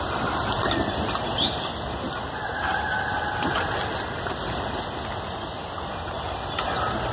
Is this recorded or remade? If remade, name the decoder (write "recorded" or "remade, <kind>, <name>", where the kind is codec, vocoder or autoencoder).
recorded